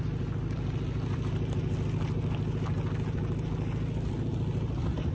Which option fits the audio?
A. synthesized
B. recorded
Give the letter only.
B